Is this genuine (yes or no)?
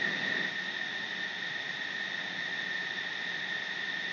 yes